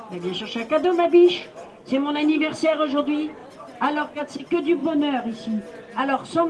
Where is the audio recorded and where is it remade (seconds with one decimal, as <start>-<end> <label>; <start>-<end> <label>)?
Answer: 0.0-2.3 recorded; 2.3-3.0 remade; 3.0-6.5 recorded

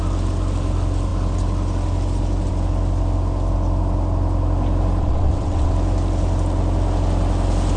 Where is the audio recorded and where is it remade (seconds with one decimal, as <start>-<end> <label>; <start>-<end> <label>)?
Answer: 0.0-5.0 recorded; 5.0-5.7 remade; 5.7-7.8 recorded

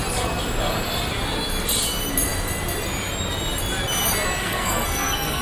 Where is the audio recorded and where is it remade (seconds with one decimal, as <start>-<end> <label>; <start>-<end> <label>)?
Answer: 0.0-4.4 recorded; 4.4-5.4 remade

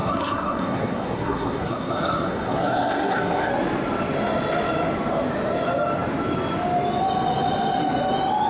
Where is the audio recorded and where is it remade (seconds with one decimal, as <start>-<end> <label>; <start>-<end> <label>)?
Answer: 0.0-3.5 remade; 3.5-8.5 recorded